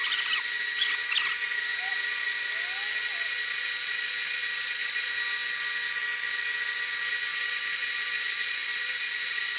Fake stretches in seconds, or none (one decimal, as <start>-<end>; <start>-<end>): none